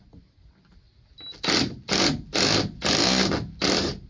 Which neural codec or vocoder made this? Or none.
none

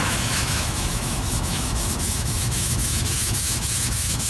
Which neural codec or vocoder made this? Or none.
autoencoder, DAC-VAE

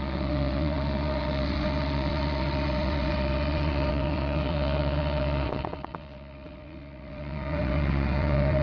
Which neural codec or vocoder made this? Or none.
vocoder, WaveNeXt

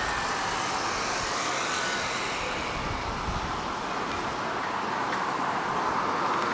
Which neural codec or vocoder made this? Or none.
none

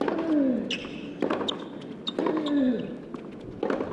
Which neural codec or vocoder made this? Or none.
none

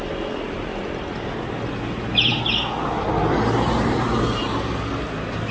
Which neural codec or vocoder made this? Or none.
none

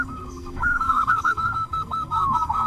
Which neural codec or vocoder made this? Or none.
codec, SNAC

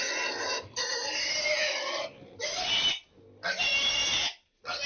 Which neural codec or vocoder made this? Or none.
none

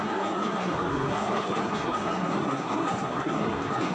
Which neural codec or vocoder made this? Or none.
codec, SNAC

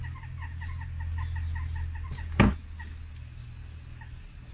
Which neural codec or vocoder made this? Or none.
none